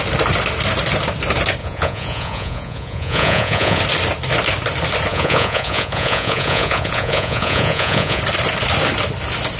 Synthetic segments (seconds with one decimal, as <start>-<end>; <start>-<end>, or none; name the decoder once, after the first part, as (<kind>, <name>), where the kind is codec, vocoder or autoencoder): 1.6-3.8 (vocoder, Vocos); 5.1-8.2